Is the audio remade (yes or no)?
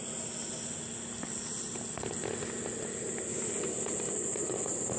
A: no